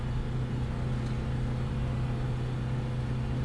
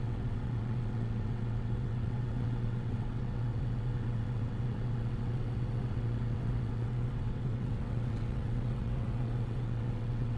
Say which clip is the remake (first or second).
second